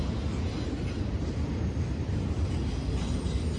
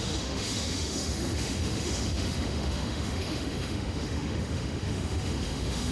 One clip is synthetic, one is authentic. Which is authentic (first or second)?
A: first